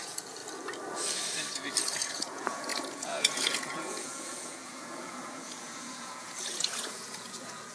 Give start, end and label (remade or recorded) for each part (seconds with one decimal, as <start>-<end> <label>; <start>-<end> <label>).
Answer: 0.0-0.4 remade; 0.4-1.8 recorded; 1.8-7.7 remade